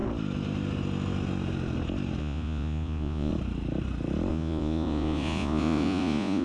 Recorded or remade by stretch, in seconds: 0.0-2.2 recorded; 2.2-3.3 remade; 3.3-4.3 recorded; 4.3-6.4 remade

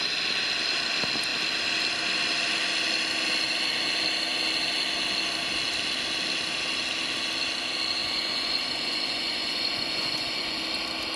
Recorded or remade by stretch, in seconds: 0.0-8.0 recorded; 8.0-10.6 remade; 10.6-11.2 recorded

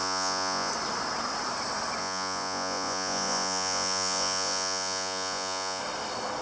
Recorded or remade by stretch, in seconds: 0.0-0.7 remade; 0.7-2.0 recorded; 2.0-5.8 remade; 5.8-6.4 recorded